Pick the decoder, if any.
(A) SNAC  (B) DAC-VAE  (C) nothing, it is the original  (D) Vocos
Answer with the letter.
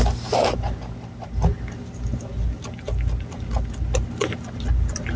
C